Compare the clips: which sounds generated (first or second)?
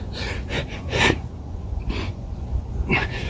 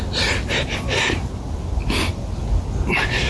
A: first